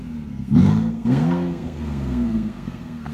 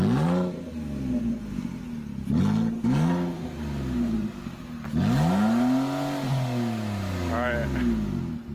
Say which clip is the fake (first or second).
first